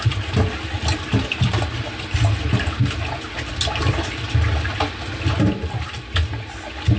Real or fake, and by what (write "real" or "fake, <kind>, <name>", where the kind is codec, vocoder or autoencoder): real